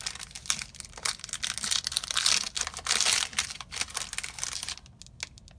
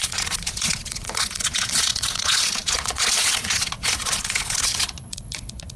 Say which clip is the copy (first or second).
second